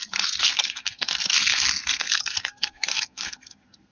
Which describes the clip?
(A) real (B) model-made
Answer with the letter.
B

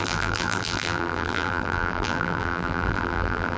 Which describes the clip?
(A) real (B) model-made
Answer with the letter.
B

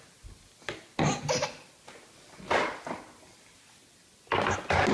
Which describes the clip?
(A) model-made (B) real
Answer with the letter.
B